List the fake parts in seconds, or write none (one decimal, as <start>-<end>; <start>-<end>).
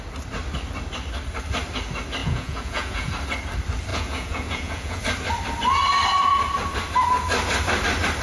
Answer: 2.2-3.1; 3.9-5.0